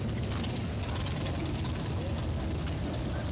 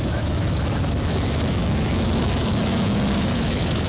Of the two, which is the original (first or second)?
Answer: first